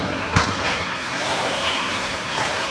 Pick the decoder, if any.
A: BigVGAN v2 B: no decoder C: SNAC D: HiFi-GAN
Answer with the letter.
C